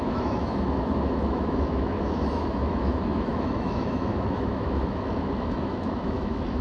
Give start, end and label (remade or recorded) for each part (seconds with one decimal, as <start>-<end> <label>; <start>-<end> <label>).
0.0-6.6 remade